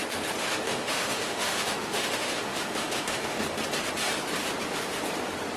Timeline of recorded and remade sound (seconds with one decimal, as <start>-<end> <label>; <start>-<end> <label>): 0.0-0.4 recorded; 0.4-3.4 remade; 3.4-5.6 recorded